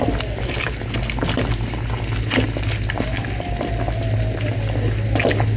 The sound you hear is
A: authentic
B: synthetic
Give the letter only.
A